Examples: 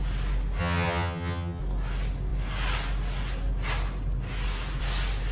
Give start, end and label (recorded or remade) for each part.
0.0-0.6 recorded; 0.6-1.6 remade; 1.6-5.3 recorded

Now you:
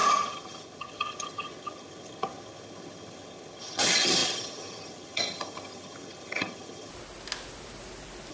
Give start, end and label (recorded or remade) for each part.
0.0-6.9 remade; 6.9-8.3 recorded